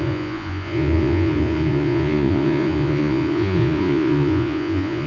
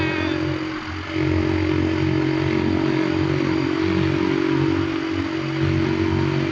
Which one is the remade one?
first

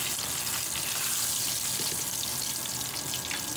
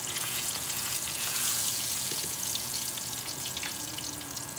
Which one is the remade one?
second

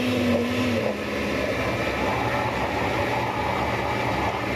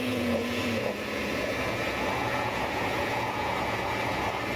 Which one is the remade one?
second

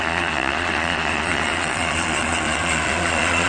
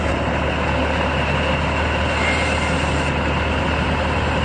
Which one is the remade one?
first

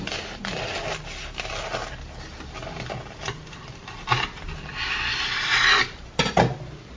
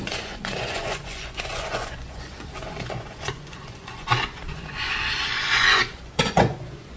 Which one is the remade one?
second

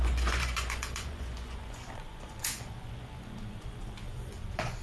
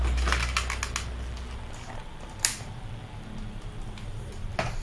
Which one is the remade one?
first